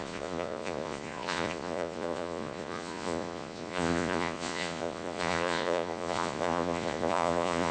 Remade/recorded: remade